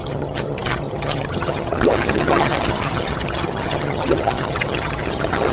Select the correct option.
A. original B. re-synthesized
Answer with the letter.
B